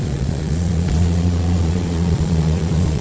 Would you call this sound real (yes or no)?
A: no